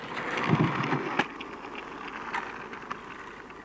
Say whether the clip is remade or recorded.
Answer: recorded